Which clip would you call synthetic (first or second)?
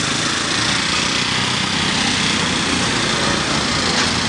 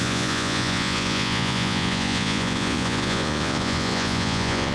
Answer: second